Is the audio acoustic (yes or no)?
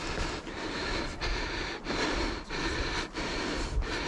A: yes